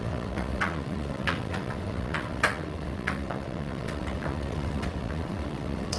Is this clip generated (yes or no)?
yes